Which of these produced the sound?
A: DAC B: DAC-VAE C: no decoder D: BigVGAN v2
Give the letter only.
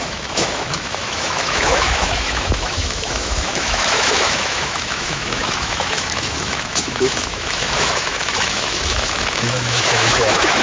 B